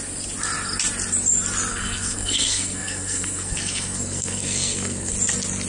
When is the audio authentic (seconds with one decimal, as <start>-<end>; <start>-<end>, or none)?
0.0-1.7; 5.1-5.7